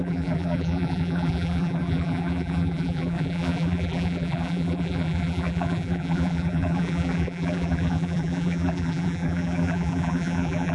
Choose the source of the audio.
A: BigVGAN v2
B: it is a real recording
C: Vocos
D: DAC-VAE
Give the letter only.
A